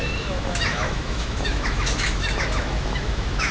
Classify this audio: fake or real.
fake